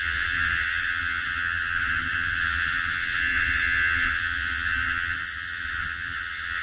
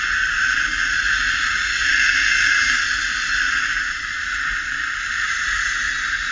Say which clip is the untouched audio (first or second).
second